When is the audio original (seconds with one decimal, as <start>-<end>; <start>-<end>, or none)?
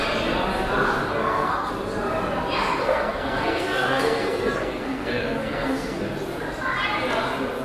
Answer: 0.0-1.2; 1.7-2.8; 6.0-7.6